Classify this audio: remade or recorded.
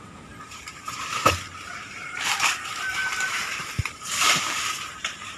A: remade